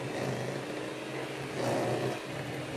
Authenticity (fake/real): real